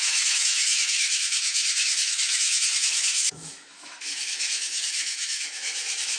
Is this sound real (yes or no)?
no